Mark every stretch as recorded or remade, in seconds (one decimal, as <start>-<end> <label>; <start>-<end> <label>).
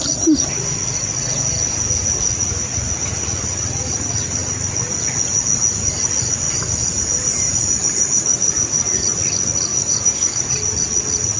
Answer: 0.0-9.7 recorded; 9.7-10.5 remade; 10.5-11.4 recorded